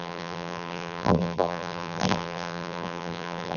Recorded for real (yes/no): no